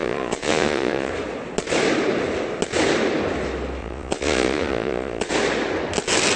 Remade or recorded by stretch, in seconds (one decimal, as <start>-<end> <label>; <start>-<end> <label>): 0.0-1.1 remade; 1.1-3.8 recorded; 3.8-5.3 remade; 5.3-6.4 recorded